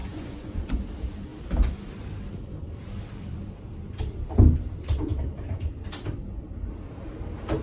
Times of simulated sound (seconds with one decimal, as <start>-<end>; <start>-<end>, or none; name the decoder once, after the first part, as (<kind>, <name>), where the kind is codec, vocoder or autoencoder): 0.0-0.8 (vocoder, Vocos)